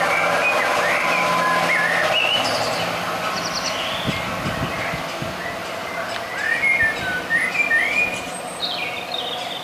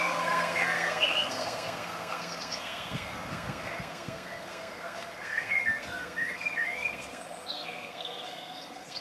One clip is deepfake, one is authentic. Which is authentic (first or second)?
first